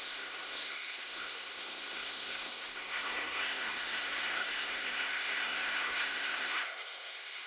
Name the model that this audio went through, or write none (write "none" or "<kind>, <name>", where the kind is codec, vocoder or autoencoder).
codec, SNAC